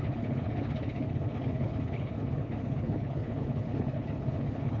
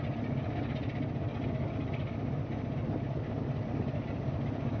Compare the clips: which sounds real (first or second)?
second